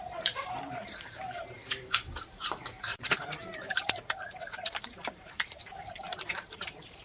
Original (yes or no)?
no